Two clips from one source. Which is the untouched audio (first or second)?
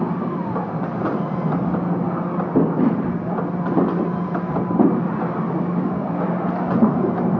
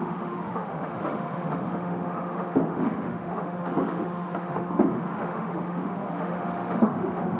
first